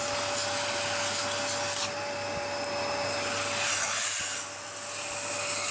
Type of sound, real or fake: real